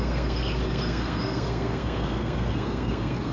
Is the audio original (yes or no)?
no